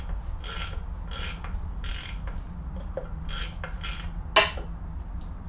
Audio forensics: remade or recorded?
recorded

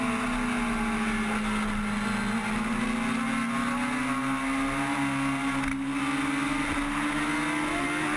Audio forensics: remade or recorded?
recorded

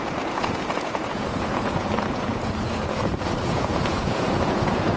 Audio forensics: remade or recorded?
remade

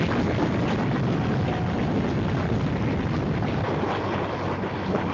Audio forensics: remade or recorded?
recorded